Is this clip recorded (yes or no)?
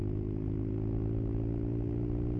yes